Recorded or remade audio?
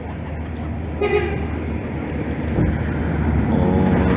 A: recorded